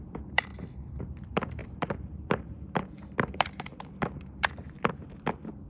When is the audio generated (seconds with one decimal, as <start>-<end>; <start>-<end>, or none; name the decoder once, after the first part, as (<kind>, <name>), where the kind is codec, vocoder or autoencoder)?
0.0-0.5 (vocoder, BigVGAN v2); 1.0-5.7